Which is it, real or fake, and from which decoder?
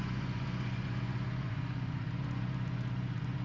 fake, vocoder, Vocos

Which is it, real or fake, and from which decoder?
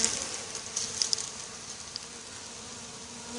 real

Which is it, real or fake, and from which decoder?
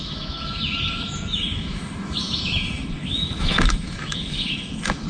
fake, autoencoder, DAC-VAE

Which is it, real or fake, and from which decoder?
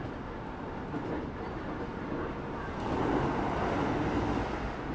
real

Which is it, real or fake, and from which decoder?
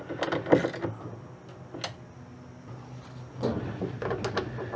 real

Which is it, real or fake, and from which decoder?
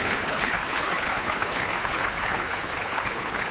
fake, codec, HILCodec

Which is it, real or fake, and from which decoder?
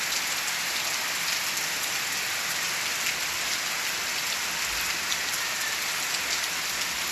real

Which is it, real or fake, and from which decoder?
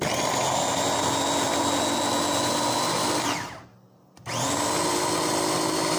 real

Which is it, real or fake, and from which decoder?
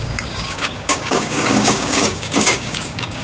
fake, codec, DAC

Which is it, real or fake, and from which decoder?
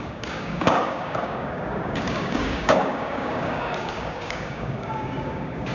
fake, codec, DAC